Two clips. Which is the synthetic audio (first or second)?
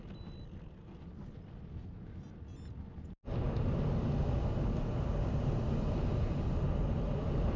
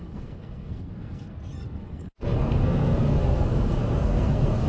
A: second